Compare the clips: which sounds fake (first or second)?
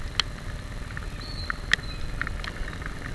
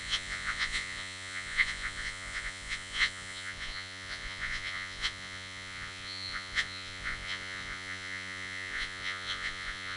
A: second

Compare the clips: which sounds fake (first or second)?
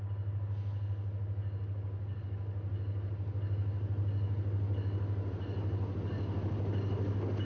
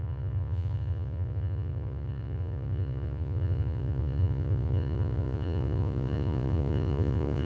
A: second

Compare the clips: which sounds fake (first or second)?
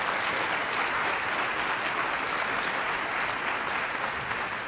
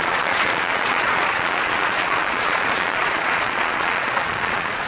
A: second